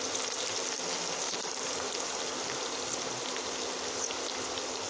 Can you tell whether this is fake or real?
real